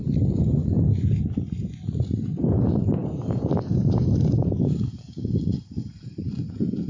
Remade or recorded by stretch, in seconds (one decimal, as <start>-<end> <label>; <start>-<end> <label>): 0.0-3.0 recorded; 3.0-5.4 remade; 5.4-6.9 recorded